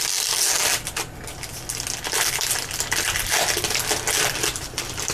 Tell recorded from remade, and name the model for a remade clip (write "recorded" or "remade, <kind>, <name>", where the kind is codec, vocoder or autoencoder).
recorded